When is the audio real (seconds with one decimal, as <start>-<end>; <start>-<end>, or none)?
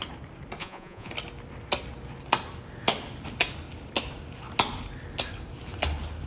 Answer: 0.0-0.6; 1.1-6.3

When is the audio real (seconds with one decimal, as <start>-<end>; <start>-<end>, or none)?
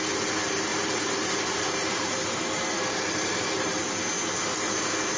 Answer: 0.0-0.7; 3.8-5.2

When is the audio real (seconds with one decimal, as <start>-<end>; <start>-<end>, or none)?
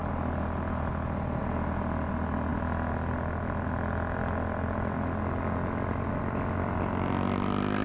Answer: 0.0-7.8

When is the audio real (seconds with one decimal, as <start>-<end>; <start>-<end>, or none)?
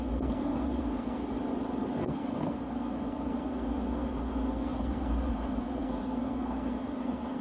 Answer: 1.2-2.0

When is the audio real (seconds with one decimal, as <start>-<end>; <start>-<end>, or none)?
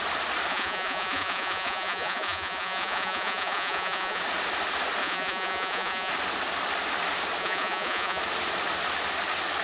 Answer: 0.0-0.5; 4.2-5.0; 6.1-7.4; 8.2-9.6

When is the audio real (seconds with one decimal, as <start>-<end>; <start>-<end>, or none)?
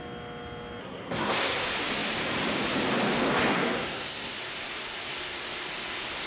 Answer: 0.0-0.8; 1.6-3.5; 4.3-6.3